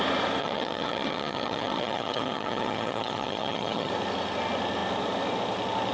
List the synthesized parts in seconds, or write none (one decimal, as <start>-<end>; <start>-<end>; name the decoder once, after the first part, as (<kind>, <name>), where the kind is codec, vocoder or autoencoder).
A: 0.4-3.9 (vocoder, HiFi-GAN)